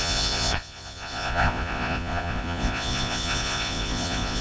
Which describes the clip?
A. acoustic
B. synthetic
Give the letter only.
B